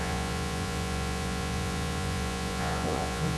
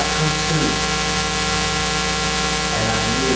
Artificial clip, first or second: first